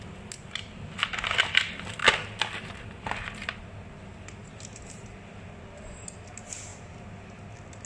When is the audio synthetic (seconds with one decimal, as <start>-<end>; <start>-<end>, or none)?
none